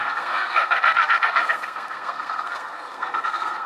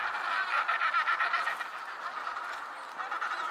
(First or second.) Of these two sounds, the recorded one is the second